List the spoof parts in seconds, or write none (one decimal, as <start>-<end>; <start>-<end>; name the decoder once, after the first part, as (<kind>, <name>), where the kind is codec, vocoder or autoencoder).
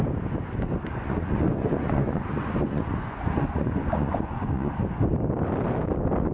0.9-4.7 (vocoder, Vocos)